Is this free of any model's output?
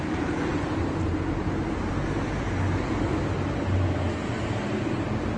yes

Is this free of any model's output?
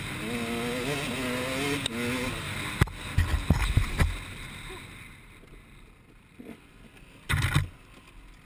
yes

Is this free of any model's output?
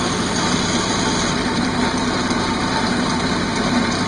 no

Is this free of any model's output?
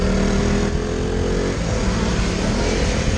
yes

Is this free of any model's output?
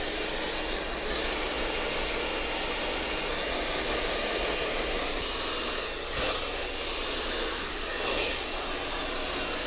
yes